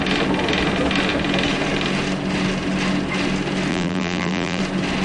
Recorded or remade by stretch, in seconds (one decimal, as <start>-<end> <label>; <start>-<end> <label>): 0.0-3.7 recorded; 3.7-4.6 remade; 4.6-5.0 recorded